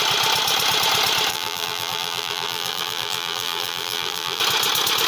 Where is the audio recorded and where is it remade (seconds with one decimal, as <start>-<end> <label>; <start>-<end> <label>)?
0.0-1.3 recorded; 1.3-4.4 remade; 4.4-5.1 recorded